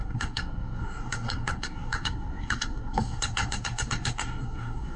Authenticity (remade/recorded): remade